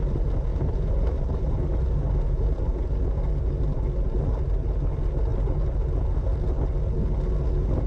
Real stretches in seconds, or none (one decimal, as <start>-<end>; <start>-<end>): 0.0-0.5; 2.9-7.9